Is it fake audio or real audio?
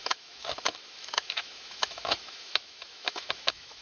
fake